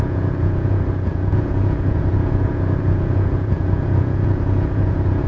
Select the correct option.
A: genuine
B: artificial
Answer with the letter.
B